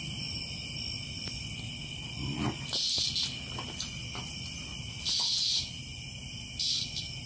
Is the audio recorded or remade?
recorded